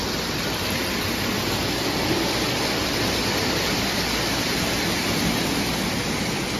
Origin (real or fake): real